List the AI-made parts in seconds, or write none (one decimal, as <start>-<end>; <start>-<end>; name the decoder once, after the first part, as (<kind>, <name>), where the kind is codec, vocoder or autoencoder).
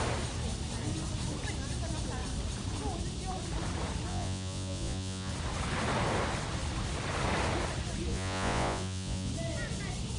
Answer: 4.1-5.3 (vocoder, Vocos); 8.1-9.3